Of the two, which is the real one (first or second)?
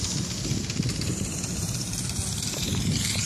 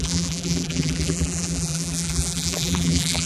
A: first